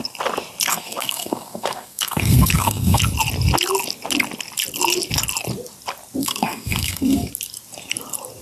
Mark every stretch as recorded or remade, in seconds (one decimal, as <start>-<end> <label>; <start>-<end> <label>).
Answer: 0.0-0.7 recorded; 0.7-3.0 remade; 3.0-6.2 recorded; 6.2-7.3 remade; 7.3-8.4 recorded